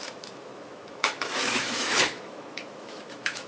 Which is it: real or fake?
fake